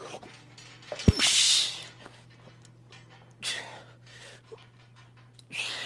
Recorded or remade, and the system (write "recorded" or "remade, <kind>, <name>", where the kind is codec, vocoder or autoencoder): recorded